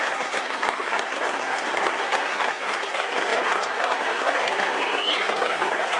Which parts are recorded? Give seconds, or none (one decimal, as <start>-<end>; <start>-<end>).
none